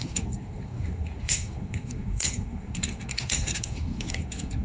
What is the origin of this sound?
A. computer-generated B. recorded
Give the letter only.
A